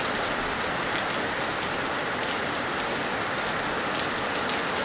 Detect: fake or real real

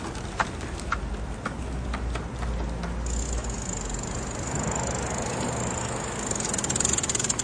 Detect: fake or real real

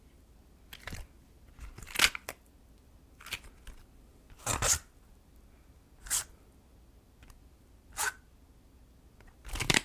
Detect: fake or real real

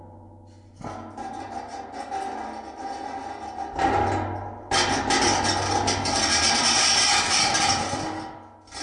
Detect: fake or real real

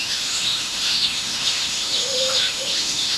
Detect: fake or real fake